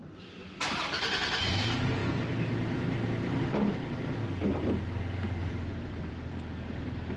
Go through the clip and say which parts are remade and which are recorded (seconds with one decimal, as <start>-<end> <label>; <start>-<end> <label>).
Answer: 0.0-2.0 recorded; 2.0-3.9 remade; 3.9-5.4 recorded; 5.4-6.4 remade; 6.4-7.2 recorded